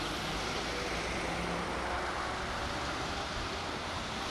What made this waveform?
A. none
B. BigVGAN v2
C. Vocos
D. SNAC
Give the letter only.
A